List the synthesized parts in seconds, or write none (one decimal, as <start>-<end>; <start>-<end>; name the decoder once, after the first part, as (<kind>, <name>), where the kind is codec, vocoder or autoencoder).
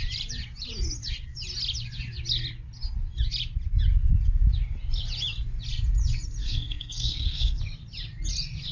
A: 6.4-7.6 (codec, SNAC)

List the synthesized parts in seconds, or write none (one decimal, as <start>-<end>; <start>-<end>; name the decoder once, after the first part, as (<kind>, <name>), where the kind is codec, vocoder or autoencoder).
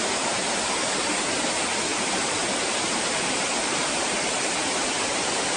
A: 1.9-5.6 (vocoder, BigVGAN v2)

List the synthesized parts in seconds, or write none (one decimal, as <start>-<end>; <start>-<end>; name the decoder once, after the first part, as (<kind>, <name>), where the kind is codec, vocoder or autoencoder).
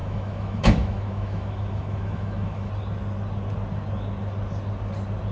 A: 0.0-2.7 (autoencoder, DAC-VAE)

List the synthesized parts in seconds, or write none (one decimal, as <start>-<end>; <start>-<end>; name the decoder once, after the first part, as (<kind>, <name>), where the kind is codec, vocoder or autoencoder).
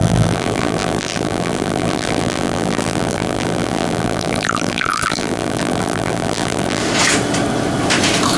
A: 0.0-6.8 (vocoder, BigVGAN v2)